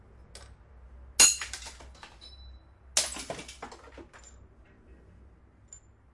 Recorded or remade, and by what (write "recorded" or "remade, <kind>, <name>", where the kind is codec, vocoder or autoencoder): recorded